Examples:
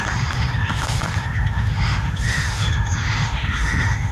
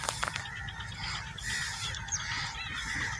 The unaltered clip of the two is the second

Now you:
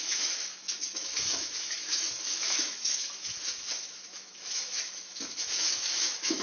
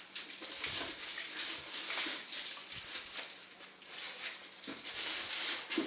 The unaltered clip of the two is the second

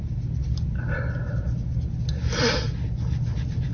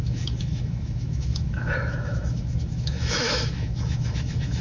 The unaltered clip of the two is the first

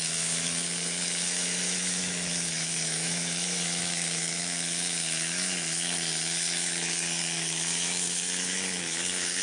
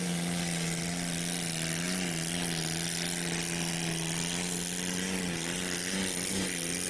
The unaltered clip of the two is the second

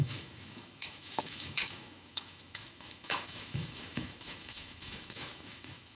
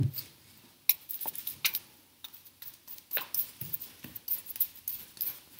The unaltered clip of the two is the second